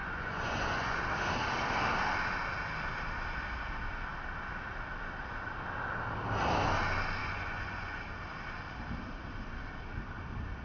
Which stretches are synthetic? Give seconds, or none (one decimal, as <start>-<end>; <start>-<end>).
0.0-1.0; 7.2-8.0